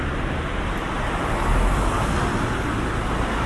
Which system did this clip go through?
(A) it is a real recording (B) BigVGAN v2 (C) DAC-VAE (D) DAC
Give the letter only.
A